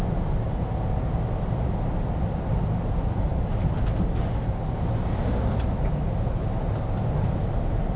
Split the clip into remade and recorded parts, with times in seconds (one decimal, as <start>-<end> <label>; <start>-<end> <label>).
0.0-8.0 recorded